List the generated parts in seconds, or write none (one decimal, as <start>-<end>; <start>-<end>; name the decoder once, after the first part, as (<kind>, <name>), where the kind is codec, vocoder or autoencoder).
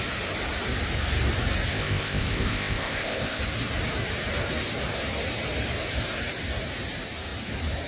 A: 1.7-3.4 (codec, ZipCodec)